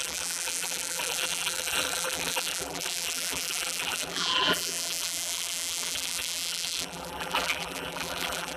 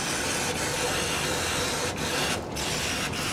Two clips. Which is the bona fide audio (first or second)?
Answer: second